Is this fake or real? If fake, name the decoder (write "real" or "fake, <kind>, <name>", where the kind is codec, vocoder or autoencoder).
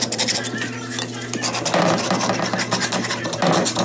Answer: real